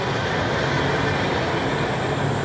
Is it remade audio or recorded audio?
recorded